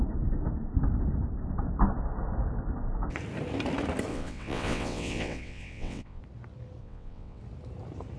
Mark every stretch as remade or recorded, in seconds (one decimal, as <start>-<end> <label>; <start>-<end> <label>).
0.0-4.1 recorded; 4.1-6.2 remade; 6.2-6.8 recorded; 6.8-7.4 remade; 7.4-8.2 recorded